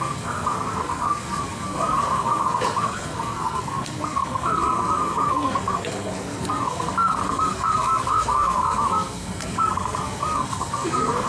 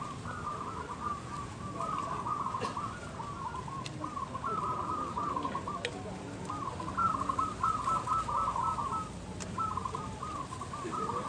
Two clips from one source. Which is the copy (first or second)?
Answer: first